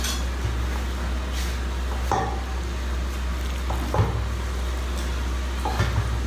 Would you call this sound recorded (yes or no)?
yes